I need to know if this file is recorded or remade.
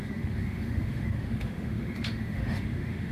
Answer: remade